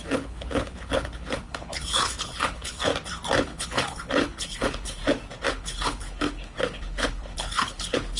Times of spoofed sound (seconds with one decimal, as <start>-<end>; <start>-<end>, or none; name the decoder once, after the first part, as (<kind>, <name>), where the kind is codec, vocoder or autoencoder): 0.0-2.9 (codec, HILCodec); 3.4-5.0; 5.5-8.2